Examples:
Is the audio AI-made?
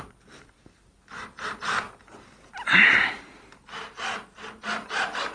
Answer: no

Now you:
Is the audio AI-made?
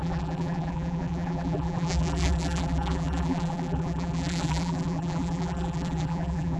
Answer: yes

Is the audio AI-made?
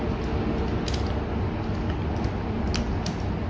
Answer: no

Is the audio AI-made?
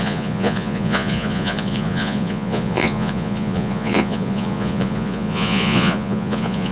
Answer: yes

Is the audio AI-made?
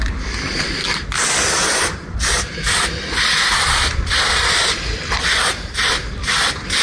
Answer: yes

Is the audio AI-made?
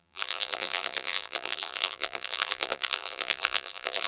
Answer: yes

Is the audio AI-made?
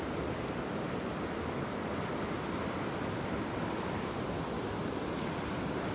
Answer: no